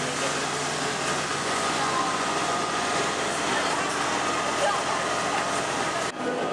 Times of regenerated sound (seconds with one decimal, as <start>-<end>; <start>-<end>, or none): 1.3-3.0